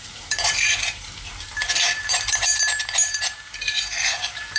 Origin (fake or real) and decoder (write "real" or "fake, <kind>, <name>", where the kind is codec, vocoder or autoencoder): fake, vocoder, BigVGAN v2